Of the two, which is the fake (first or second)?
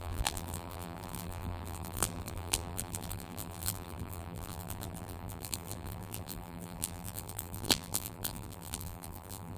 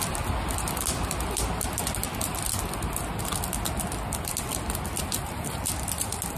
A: first